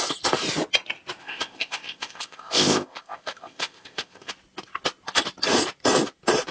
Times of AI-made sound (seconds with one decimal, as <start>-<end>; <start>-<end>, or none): 1.2-4.3